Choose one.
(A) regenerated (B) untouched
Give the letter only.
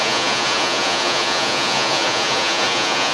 A